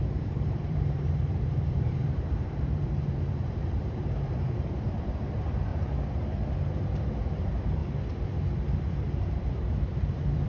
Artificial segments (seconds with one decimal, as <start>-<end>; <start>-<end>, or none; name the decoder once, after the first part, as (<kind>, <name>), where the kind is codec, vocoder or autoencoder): 0.0-5.7 (vocoder, BigVGAN v2); 7.3-7.8; 9.2-10.5